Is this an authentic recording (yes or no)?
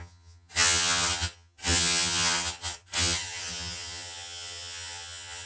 no